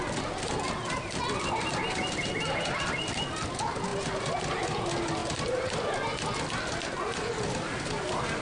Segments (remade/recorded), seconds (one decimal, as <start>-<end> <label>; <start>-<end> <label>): 0.0-8.4 recorded

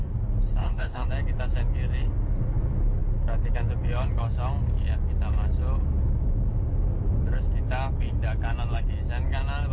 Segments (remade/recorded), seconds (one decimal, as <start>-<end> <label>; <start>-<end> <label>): 0.0-0.6 recorded; 0.6-1.1 remade; 1.1-9.7 recorded

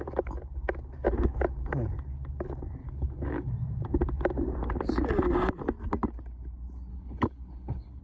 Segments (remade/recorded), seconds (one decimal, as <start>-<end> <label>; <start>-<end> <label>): 0.0-2.8 recorded; 2.8-3.5 remade; 3.5-6.9 recorded; 6.9-8.0 remade

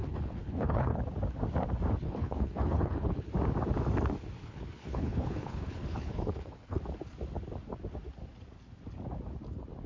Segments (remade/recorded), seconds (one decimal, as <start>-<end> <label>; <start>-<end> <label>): 0.0-1.0 remade; 1.0-2.0 recorded; 2.0-3.3 remade; 3.3-4.4 recorded; 4.4-6.8 remade; 6.8-9.9 recorded

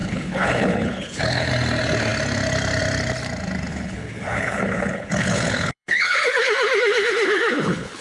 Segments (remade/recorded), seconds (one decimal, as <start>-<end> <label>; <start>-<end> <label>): 0.0-1.5 remade; 1.5-3.7 recorded; 3.7-8.0 remade

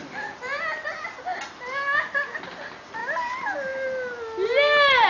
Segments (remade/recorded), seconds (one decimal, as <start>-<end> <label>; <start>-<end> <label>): 0.0-5.1 recorded

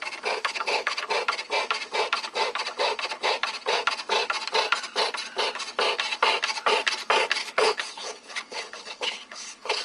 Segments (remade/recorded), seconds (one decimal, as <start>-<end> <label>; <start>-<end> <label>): 0.0-0.4 recorded; 0.4-1.1 remade; 1.1-7.4 recorded; 7.4-9.8 remade

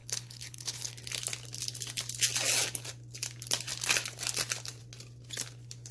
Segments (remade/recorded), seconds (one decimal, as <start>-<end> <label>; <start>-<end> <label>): 0.0-0.9 remade; 0.9-5.9 recorded